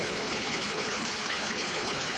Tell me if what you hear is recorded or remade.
remade